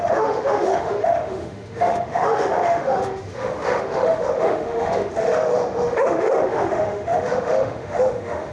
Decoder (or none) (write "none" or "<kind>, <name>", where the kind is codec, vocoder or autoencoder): autoencoder, DAC-VAE